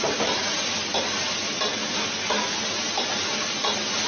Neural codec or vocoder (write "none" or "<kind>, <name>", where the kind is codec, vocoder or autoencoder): none